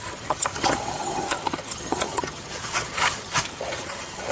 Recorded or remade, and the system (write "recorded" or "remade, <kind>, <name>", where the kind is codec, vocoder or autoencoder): remade, vocoder, HiFi-GAN